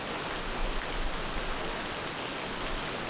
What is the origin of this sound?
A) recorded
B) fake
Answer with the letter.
A